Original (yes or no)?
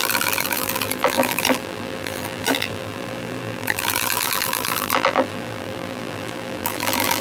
no